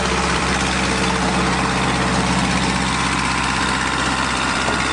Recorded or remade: remade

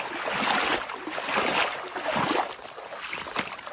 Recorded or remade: recorded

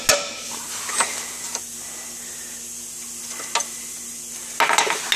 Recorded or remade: recorded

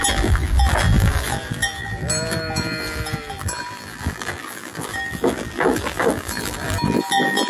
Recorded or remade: remade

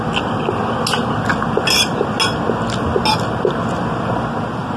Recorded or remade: recorded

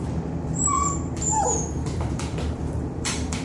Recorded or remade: remade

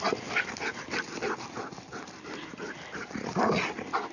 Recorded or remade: recorded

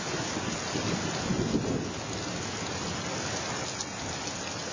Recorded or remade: recorded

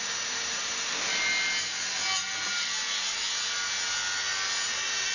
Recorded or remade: recorded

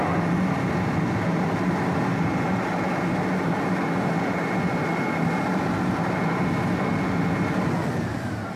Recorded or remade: recorded